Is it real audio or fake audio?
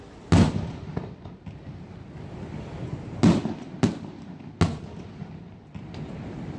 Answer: real